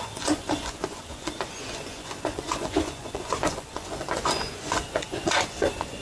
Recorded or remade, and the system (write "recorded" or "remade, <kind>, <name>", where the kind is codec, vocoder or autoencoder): remade, vocoder, Vocos